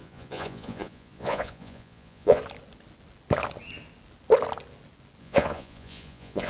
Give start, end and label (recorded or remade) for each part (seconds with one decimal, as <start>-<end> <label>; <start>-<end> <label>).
0.0-2.4 remade; 2.4-5.2 recorded; 5.2-6.5 remade